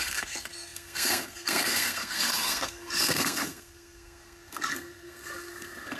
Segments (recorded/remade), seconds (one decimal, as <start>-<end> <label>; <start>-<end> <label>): 0.0-6.0 remade